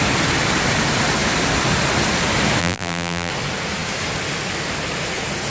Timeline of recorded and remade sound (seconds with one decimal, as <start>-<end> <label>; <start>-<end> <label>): 0.0-2.6 recorded; 2.6-3.3 remade; 3.3-5.5 recorded